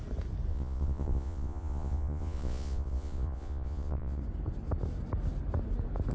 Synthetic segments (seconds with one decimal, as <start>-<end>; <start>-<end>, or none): 0.5-4.2

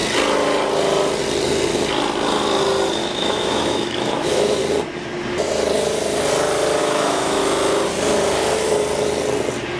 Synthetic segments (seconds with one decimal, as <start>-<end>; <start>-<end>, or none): 3.0-4.6; 6.8-7.4

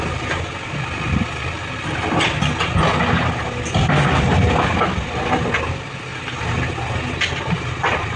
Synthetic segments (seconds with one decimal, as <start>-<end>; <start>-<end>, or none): none

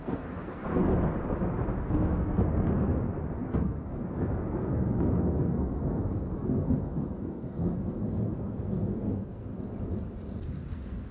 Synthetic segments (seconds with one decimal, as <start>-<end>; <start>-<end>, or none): 0.0-0.9; 1.8-2.9; 3.5-9.5; 10.7-11.1

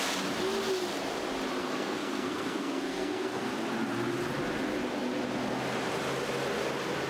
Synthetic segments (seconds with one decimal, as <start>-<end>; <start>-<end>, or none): 1.6-3.5

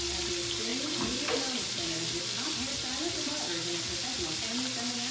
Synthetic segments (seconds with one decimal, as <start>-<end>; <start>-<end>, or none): none

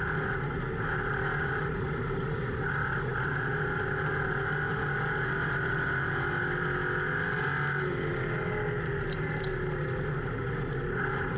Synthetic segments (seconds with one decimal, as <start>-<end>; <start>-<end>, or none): none

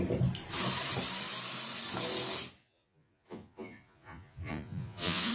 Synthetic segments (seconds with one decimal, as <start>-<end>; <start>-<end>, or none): 2.6-5.3